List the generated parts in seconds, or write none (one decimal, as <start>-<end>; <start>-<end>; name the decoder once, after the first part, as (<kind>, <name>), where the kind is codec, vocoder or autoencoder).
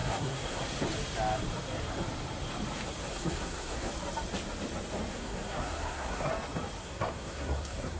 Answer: 0.0-0.6 (codec, SNAC); 3.1-3.9; 5.1-6.3; 6.8-8.0